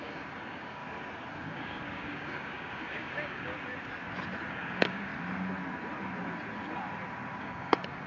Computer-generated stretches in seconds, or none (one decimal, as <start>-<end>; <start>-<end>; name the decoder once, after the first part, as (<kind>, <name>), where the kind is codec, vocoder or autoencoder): 0.0-0.8 (codec, DAC); 1.4-3.5; 4.5-5.1; 7.4-8.1